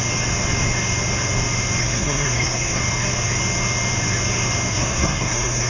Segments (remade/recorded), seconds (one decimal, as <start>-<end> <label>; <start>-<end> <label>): 0.0-1.8 recorded; 1.8-2.8 remade; 2.8-4.7 recorded; 4.7-5.7 remade